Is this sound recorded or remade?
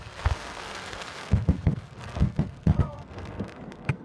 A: remade